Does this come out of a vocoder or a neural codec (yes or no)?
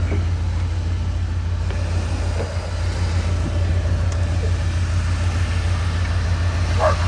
no